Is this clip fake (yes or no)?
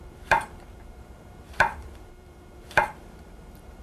yes